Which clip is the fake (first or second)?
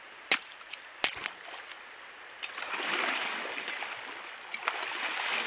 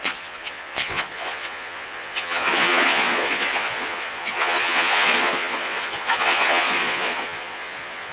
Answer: second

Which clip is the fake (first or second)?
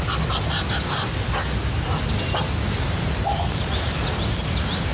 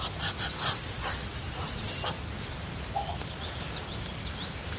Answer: second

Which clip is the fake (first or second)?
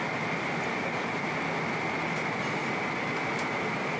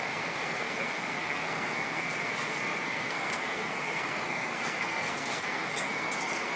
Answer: second